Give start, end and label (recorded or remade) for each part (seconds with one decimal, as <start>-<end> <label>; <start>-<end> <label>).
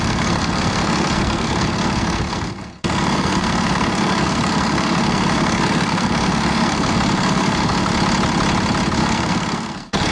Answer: 0.0-7.9 remade; 7.9-9.0 recorded; 9.0-10.1 remade